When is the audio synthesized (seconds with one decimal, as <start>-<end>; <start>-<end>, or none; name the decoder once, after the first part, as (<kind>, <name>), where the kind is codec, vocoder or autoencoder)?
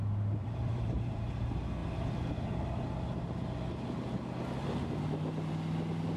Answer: 0.4-1.3 (vocoder, BigVGAN v2)